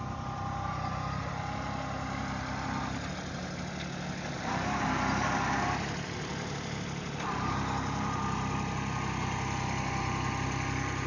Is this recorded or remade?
recorded